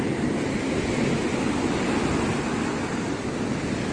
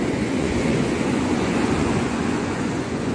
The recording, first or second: first